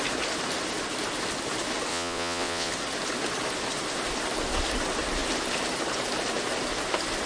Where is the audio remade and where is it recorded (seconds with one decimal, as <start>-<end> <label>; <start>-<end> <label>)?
0.0-1.9 recorded; 1.9-2.7 remade; 2.7-7.3 recorded

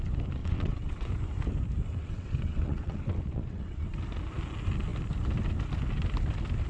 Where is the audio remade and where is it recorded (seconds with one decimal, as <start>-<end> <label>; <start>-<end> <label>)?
0.0-0.4 recorded; 0.4-1.1 remade; 1.1-2.0 recorded; 2.0-3.9 remade; 3.9-6.7 recorded